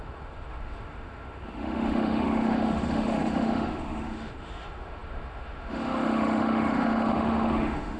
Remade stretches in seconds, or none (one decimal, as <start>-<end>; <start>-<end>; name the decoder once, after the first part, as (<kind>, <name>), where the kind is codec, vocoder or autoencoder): 0.0-8.0 (autoencoder, DAC-VAE)